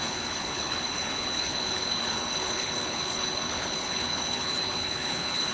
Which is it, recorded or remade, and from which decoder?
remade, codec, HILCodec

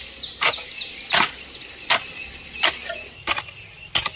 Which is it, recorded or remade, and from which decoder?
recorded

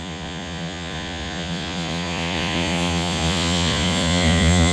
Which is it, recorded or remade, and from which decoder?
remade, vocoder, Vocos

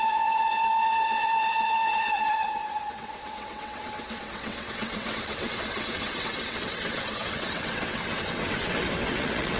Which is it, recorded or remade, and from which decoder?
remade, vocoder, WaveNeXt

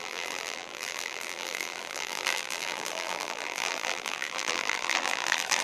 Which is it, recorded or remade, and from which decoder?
remade, vocoder, BigVGAN v2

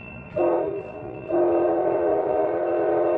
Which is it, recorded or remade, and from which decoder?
remade, vocoder, Vocos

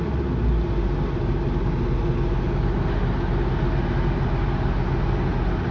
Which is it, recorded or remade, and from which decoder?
recorded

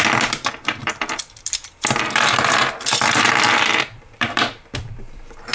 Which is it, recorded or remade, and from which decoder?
remade, vocoder, BigVGAN v2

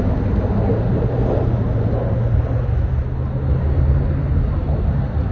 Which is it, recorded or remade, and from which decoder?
recorded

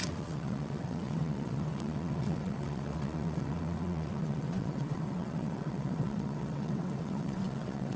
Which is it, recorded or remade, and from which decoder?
remade, vocoder, WaveNeXt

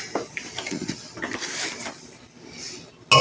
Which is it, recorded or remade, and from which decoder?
recorded